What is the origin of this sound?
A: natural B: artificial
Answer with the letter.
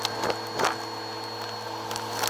A